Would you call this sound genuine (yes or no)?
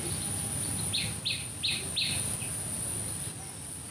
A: yes